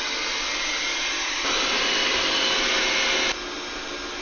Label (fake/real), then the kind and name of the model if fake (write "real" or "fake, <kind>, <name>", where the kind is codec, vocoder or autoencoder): real